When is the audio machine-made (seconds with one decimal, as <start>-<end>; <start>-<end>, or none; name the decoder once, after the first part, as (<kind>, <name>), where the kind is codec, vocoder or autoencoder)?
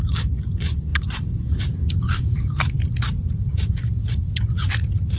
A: 0.9-4.0 (vocoder, BigVGAN v2)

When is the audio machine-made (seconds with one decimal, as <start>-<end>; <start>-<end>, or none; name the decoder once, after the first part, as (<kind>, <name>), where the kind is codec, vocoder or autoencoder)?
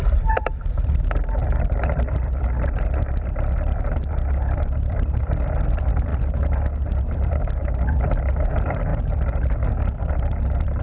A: 0.0-6.1 (vocoder, BigVGAN v2); 7.1-8.9; 10.1-10.8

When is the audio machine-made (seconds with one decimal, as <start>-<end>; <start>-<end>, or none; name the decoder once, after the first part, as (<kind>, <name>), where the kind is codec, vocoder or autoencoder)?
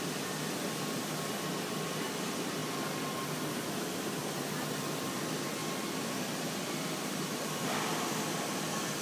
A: 0.0-2.6 (vocoder, BigVGAN v2); 4.9-5.6; 6.2-9.0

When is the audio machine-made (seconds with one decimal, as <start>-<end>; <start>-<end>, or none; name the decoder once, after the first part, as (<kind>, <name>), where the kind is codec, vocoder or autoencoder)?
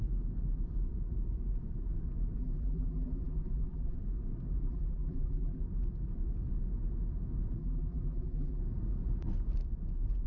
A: 2.4-4.0 (vocoder, BigVGAN v2); 4.6-5.6; 7.6-8.6